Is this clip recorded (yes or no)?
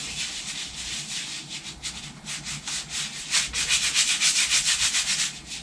yes